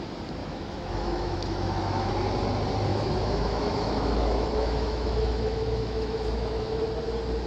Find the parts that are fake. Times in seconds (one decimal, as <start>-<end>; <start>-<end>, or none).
0.4-2.1; 2.9-6.8